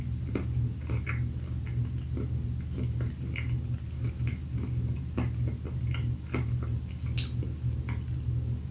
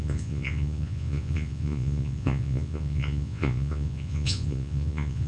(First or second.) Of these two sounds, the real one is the first